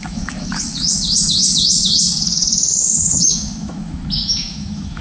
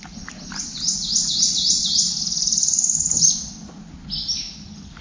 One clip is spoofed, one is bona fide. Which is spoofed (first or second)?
first